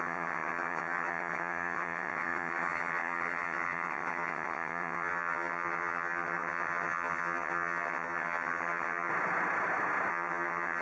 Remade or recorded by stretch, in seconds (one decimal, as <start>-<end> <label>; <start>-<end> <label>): 0.0-9.1 remade; 9.1-10.1 recorded; 10.1-10.8 remade